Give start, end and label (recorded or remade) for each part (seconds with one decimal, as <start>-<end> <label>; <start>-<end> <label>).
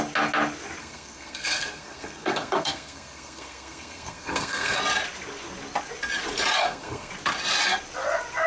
0.0-0.8 recorded; 0.8-4.8 remade; 4.8-6.6 recorded; 6.6-7.1 remade; 7.1-8.5 recorded